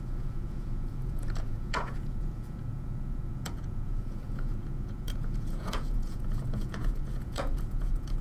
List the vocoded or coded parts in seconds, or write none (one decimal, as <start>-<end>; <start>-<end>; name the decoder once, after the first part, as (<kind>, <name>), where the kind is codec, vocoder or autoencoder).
0.0-8.2 (vocoder, Vocos)